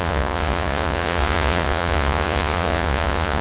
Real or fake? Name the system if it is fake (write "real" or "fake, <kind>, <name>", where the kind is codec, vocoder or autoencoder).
fake, vocoder, Vocos